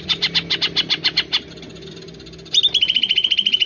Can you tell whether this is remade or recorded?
recorded